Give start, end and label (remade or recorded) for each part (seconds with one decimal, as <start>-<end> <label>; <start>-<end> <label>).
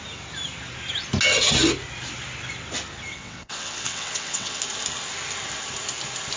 0.0-3.1 recorded; 3.1-4.6 remade; 4.6-6.4 recorded